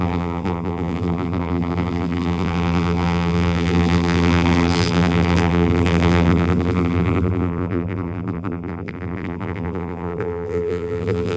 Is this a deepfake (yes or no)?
yes